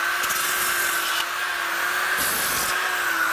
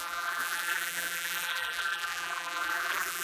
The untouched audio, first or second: first